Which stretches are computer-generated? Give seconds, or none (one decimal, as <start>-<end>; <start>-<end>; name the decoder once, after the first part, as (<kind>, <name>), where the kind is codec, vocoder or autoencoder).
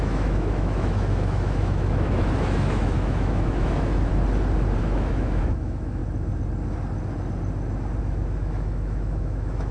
0.0-4.1 (autoencoder, DAC-VAE); 4.8-6.0; 8.0-9.7